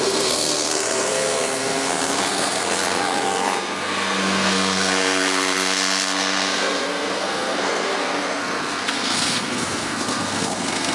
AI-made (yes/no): yes